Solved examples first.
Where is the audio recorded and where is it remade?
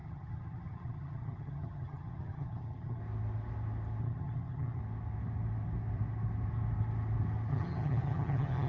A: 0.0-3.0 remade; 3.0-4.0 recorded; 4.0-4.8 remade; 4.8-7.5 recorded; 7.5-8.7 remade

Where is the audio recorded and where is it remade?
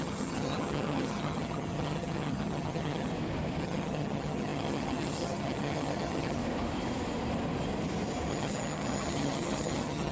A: 0.0-3.1 remade; 3.1-3.6 recorded; 3.6-6.4 remade; 6.4-8.3 recorded; 8.3-10.1 remade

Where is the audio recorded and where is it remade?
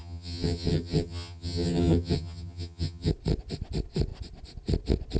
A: 0.0-3.1 remade; 3.1-5.2 recorded